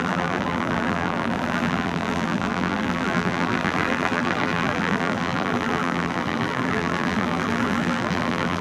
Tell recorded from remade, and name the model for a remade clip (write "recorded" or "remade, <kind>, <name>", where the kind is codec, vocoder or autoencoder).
remade, vocoder, BigVGAN v2